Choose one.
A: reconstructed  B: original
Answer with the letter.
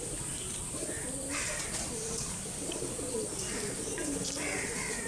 B